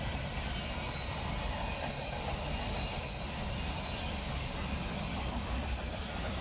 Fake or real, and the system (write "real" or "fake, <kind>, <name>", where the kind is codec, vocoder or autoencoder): real